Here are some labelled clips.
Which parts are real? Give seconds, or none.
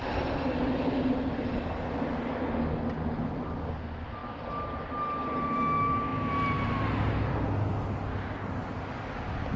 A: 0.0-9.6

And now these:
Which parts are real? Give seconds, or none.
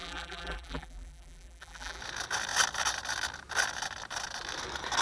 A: 2.0-5.0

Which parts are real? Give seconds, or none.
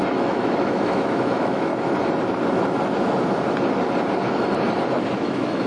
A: 1.7-5.1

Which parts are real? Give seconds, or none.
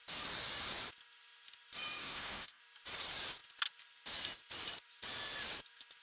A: 0.0-2.0; 2.6-6.0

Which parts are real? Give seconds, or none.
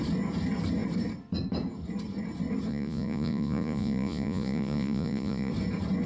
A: 0.0-2.7; 5.5-6.1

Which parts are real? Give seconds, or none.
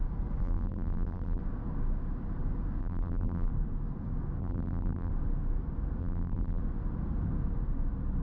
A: 0.0-0.4; 1.4-2.8; 3.5-4.4; 5.1-6.0; 6.6-8.2